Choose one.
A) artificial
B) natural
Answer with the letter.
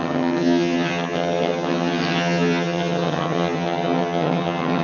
A